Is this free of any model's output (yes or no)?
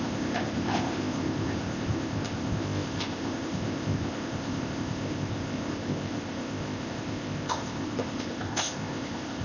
no